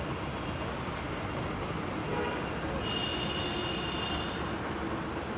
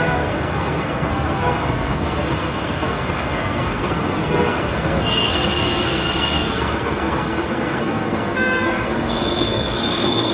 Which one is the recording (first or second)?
first